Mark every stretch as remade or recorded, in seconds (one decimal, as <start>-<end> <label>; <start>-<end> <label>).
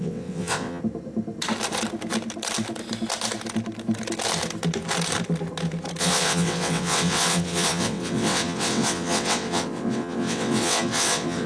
0.0-0.8 remade; 0.8-6.0 recorded; 6.0-11.5 remade